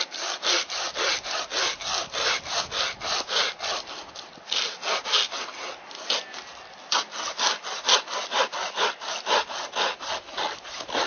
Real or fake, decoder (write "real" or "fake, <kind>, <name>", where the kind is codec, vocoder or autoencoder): real